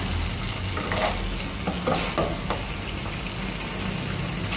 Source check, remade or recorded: recorded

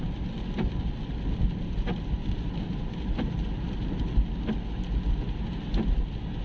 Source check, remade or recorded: recorded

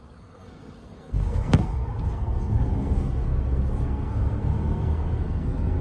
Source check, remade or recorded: remade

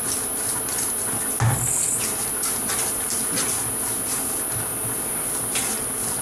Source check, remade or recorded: recorded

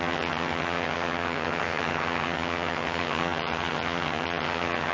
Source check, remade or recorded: remade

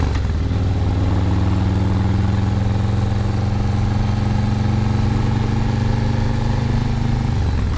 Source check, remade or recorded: recorded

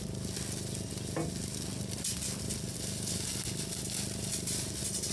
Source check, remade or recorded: recorded